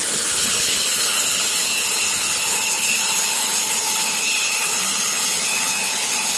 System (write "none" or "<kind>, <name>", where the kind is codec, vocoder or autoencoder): codec, HILCodec